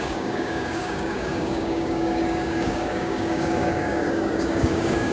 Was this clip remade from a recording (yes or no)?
yes